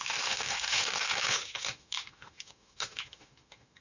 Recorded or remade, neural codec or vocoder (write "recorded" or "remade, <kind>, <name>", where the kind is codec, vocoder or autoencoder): remade, autoencoder, DAC-VAE